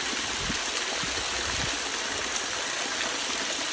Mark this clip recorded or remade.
recorded